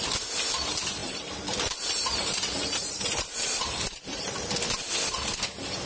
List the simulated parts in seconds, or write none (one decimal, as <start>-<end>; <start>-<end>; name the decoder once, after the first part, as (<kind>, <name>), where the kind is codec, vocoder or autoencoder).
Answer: 1.0-4.5 (vocoder, BigVGAN v2)